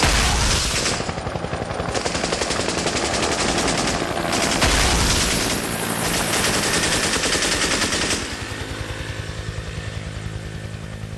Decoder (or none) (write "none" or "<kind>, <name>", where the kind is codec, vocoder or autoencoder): none